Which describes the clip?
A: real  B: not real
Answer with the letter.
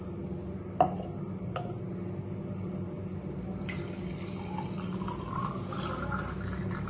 A